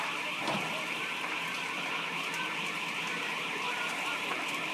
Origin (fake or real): real